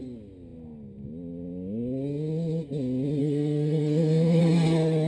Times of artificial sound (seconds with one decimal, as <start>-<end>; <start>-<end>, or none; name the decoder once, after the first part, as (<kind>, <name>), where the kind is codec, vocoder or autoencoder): 3.2-4.4 (codec, SNAC)